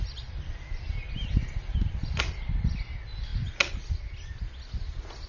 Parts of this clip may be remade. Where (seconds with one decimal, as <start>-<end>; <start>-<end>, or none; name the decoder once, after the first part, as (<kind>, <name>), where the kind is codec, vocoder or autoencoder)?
0.0-2.5 (vocoder, BigVGAN v2)